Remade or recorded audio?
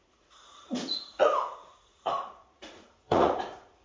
remade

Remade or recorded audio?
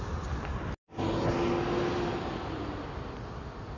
recorded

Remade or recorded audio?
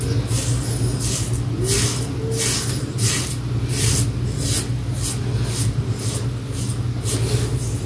recorded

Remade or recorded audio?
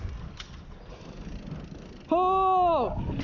recorded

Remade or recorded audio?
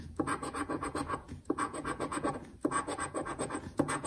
remade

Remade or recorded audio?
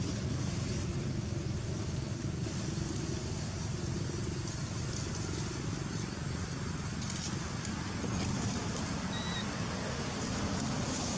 recorded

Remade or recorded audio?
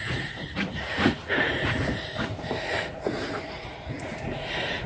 remade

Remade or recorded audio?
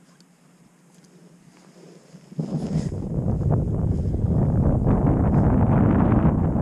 recorded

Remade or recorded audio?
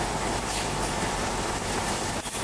recorded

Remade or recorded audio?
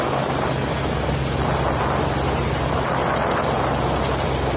recorded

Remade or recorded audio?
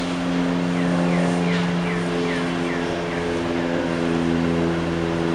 recorded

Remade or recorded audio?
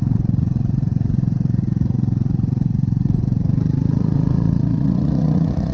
remade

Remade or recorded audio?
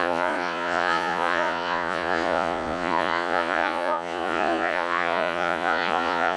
remade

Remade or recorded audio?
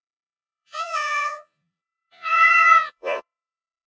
remade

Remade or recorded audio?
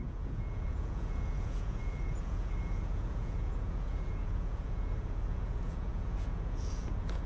remade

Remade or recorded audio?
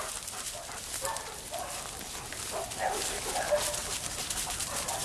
recorded